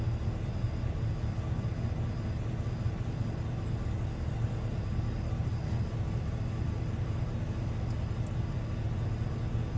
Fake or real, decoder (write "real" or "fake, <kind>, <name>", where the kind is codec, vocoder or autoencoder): real